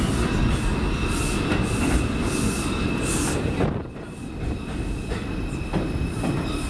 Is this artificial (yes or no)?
no